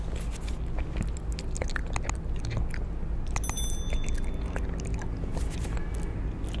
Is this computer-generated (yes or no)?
no